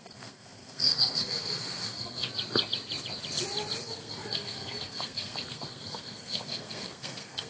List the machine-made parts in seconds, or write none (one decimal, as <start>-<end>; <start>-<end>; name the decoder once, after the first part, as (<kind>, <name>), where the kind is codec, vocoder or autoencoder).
0.0-2.3 (codec, SNAC); 3.8-7.5